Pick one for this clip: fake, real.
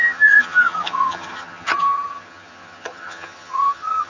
fake